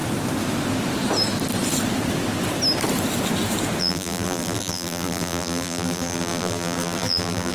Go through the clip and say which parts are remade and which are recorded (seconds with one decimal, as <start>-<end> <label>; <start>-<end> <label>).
0.0-3.8 recorded; 3.8-7.5 remade